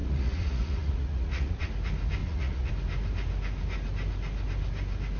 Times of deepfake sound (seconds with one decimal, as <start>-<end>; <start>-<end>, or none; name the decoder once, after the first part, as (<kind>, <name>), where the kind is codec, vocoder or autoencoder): 0.0-1.7 (vocoder, Vocos); 2.2-2.7